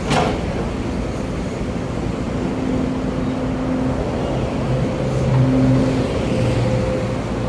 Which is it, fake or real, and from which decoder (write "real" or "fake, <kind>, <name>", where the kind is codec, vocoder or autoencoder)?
real